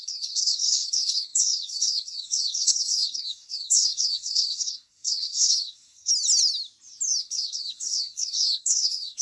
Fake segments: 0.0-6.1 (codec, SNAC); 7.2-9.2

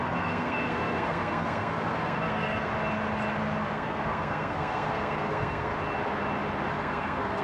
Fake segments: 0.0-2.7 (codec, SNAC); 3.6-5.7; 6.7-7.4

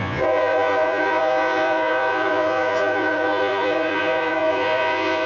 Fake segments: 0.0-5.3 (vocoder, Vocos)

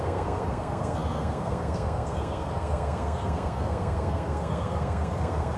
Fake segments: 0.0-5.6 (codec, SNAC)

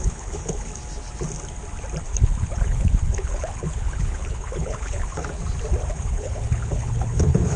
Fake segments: 0.0-0.7 (codec, HILCodec); 2.0-5.4; 5.9-7.6

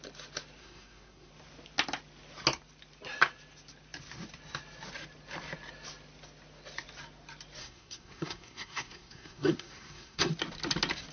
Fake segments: 0.6-1.3 (codec, SNAC); 7.6-10.3

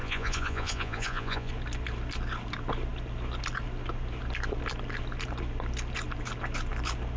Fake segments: 0.0-1.5 (vocoder, Vocos)

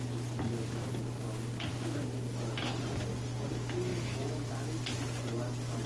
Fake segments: 3.9-4.5 (autoencoder, DAC-VAE)